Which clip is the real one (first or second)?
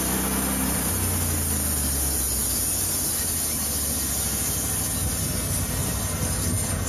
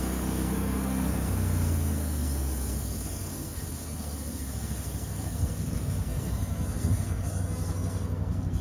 first